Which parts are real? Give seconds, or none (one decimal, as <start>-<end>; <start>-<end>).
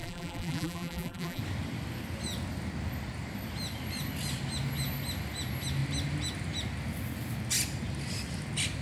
1.4-8.8